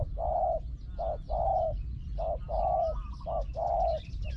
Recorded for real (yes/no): yes